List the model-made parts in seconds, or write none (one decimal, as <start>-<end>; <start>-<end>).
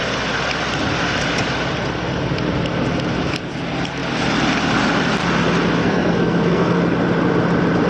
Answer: 5.8-6.8